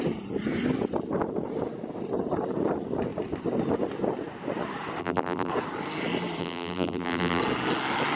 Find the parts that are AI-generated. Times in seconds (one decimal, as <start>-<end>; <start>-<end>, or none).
5.0-5.5; 6.4-7.4